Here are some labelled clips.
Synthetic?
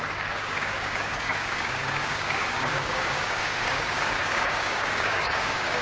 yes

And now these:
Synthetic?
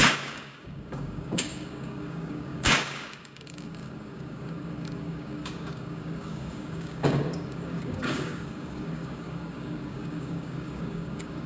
yes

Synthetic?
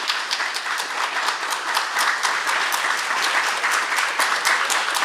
no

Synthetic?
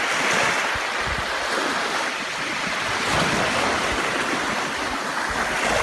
no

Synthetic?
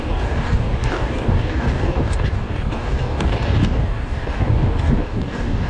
yes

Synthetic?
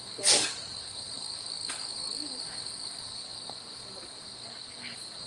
yes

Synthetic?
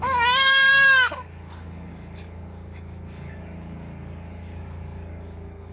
yes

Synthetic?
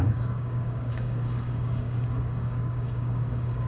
yes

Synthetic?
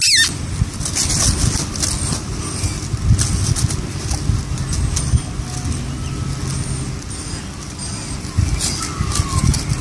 no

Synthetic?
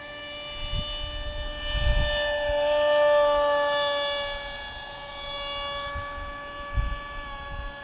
no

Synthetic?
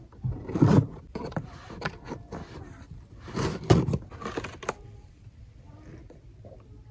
no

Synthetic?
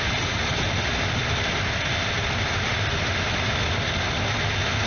no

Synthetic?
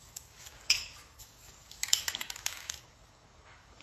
yes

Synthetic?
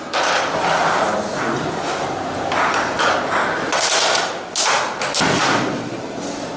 no